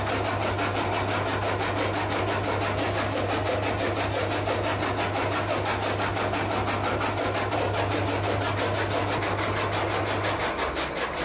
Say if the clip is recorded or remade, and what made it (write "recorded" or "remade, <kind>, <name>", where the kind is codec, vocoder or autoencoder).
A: recorded